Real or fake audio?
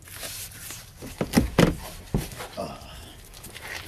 real